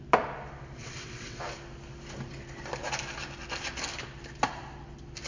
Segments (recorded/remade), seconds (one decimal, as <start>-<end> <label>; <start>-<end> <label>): 0.0-0.8 recorded; 0.8-1.4 remade; 1.4-5.3 recorded